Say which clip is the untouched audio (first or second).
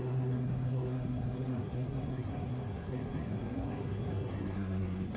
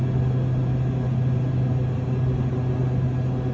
second